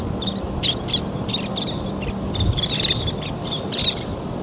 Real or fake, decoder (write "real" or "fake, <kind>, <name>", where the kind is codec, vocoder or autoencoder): real